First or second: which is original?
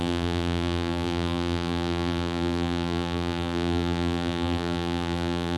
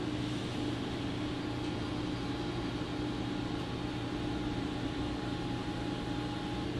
second